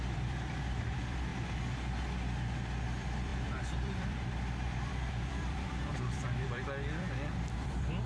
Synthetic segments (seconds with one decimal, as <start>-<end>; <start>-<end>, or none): 0.0-1.3; 2.8-8.1